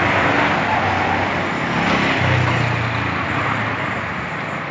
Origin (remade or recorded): recorded